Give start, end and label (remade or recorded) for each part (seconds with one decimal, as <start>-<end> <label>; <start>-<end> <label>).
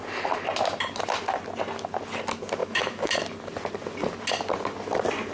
0.0-2.6 recorded; 2.6-3.1 remade; 3.1-5.3 recorded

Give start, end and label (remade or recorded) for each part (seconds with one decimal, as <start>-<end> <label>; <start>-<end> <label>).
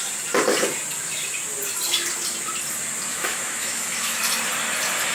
0.0-3.1 recorded; 3.1-4.2 remade; 4.2-5.1 recorded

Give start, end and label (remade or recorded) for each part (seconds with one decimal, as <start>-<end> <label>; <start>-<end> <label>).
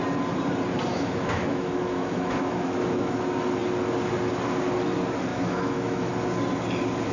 0.0-0.9 recorded; 0.9-3.2 remade; 3.2-5.3 recorded; 5.3-6.1 remade; 6.1-7.1 recorded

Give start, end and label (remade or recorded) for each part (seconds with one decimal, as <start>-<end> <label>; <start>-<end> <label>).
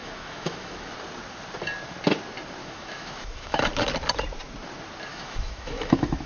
0.0-0.9 remade; 0.9-2.6 recorded; 2.6-3.7 remade; 3.7-5.1 recorded; 5.1-6.3 remade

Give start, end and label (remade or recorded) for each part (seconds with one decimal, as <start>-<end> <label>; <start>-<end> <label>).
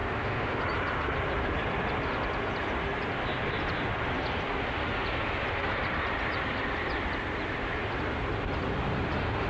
0.0-0.6 remade; 0.6-9.5 recorded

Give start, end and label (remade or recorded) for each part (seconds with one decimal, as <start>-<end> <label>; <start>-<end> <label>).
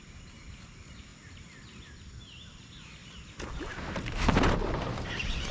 0.0-5.5 recorded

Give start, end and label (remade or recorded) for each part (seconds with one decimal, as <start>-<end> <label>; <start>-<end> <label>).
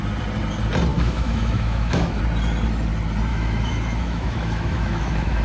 0.0-0.9 recorded; 0.9-2.2 remade; 2.2-3.3 recorded; 3.3-5.4 remade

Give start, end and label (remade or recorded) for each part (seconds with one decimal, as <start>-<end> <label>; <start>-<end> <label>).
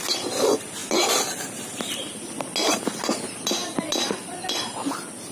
0.0-5.3 recorded